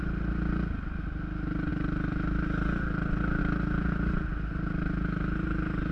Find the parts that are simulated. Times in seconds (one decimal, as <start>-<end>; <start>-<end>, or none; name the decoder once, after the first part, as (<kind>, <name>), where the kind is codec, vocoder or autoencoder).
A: none